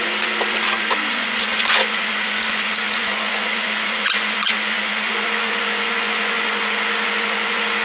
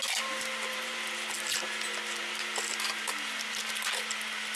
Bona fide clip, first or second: second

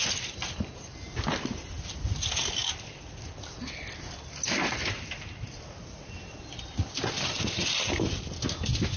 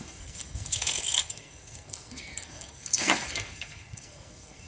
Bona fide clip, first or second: first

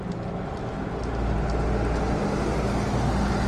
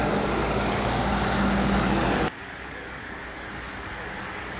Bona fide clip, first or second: first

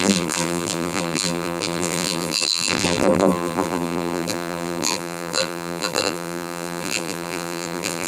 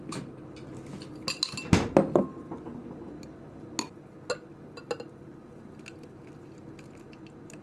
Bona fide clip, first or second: second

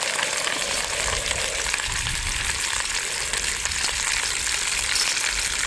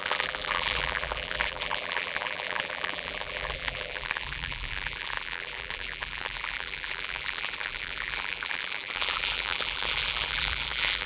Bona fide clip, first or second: first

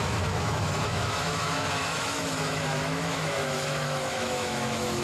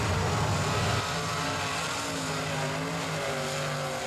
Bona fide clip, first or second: second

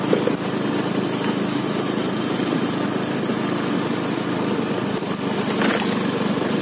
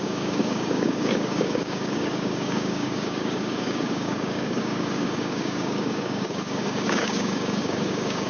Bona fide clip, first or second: first